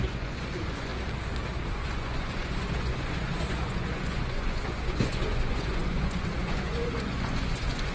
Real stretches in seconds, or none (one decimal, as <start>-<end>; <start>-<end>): 0.9-1.7